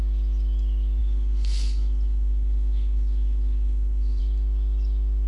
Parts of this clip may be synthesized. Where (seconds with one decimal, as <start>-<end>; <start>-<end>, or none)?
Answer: 1.0-4.2